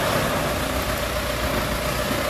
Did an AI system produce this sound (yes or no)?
no